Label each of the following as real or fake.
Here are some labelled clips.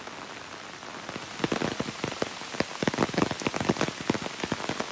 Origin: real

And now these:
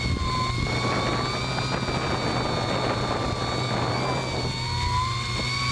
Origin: real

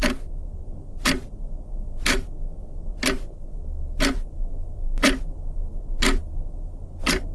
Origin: real